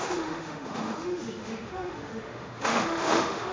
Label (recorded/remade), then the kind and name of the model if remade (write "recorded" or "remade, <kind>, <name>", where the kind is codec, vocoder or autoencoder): remade, autoencoder, DAC-VAE